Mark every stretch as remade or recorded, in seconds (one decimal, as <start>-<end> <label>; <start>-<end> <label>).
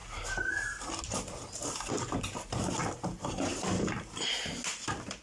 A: 0.0-5.2 recorded